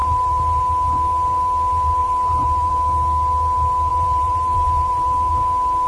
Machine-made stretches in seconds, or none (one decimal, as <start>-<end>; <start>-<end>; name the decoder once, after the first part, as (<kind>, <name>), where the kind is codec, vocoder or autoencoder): 0.0-0.6 (vocoder, BigVGAN v2); 2.0-2.7; 3.9-5.3